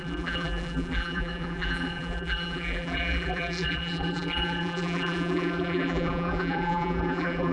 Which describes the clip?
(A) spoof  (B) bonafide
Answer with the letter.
A